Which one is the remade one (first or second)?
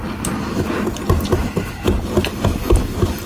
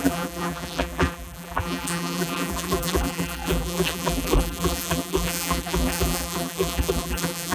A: second